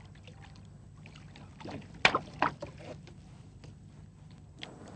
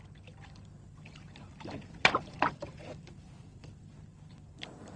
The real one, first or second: first